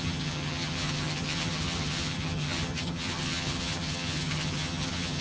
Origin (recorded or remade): remade